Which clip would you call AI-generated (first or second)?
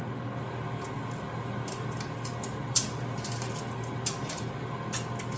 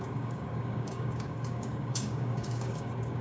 second